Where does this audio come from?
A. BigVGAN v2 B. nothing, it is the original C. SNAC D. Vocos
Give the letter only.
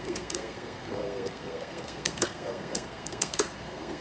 C